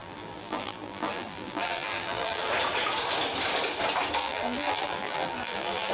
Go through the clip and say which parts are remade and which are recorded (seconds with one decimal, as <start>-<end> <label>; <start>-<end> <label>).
0.0-2.5 remade; 2.5-4.2 recorded; 4.2-5.9 remade